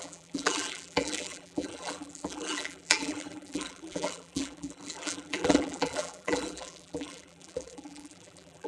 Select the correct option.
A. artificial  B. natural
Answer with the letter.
A